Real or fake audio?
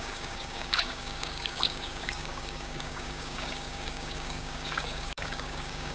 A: fake